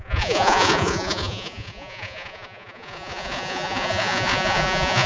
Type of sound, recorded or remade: remade